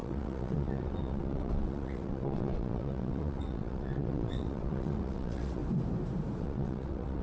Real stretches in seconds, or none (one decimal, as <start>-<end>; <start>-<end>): 5.6-6.4